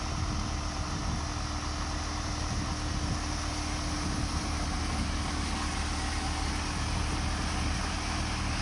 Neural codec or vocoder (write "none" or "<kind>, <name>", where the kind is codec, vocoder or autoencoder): none